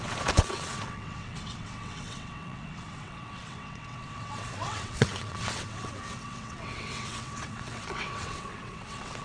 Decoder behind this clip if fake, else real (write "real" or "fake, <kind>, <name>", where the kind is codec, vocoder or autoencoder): fake, vocoder, WaveNeXt